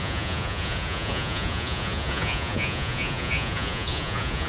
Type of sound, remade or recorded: remade